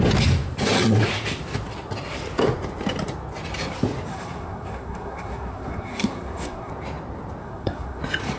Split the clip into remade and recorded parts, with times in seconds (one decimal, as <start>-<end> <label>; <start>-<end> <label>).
0.0-4.1 recorded; 4.1-6.7 remade; 6.7-7.4 recorded; 7.4-8.0 remade; 8.0-8.4 recorded